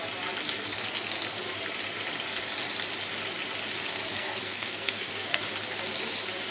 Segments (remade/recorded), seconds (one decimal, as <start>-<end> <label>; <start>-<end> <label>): 0.0-4.1 recorded; 4.1-5.4 remade; 5.4-6.5 recorded